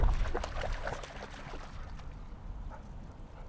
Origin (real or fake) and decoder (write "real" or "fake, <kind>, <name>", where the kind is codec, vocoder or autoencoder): real